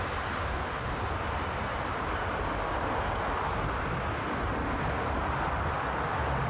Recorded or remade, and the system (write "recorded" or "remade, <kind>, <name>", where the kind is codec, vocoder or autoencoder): recorded